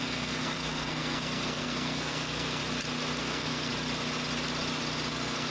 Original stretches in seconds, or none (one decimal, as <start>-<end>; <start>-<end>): 2.6-3.2; 3.7-5.1